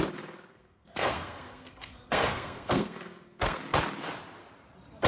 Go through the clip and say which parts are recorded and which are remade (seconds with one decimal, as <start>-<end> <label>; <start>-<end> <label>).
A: 0.0-0.5 recorded; 0.5-3.6 remade; 3.6-5.1 recorded